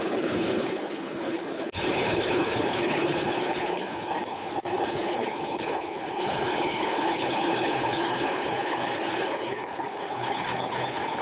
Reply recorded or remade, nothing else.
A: remade